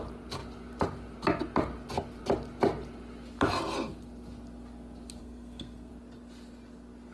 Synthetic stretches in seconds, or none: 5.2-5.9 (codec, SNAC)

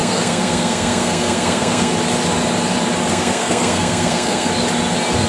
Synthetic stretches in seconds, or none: 0.0-1.9 (codec, SNAC); 3.1-4.5